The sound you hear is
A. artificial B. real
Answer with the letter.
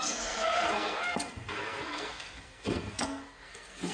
A